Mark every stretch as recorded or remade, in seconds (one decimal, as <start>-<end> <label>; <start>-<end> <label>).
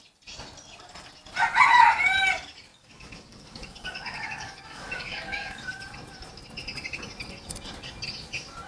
0.0-2.7 recorded; 2.7-5.6 remade; 5.6-8.7 recorded